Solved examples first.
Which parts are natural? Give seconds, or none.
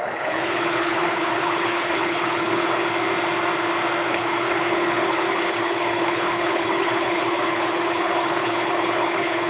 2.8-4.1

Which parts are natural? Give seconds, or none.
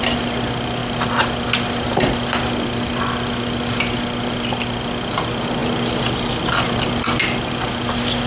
0.0-8.3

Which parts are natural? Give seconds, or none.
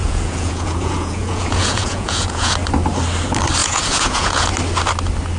2.5-3.6; 4.5-5.4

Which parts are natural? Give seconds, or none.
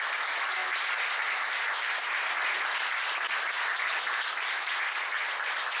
0.0-5.8